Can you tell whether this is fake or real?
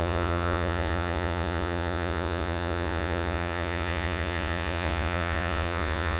fake